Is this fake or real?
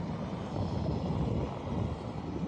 real